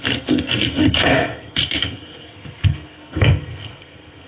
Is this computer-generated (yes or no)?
yes